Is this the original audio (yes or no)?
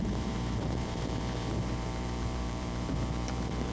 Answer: no